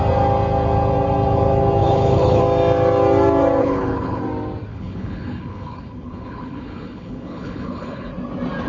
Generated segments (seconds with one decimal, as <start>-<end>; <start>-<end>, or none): 1.8-2.4; 3.6-4.2; 4.7-8.1